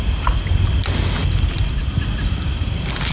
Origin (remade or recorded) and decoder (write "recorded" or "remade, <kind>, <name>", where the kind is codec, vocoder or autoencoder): recorded